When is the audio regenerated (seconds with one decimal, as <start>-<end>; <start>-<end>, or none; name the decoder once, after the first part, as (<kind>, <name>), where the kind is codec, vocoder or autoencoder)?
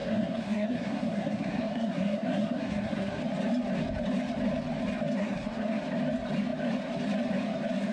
0.0-3.2 (codec, SNAC); 5.2-5.8